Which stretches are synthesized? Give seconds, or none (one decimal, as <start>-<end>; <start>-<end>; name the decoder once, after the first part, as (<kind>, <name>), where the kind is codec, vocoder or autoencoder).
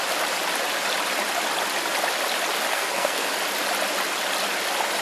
2.7-3.3 (codec, SNAC)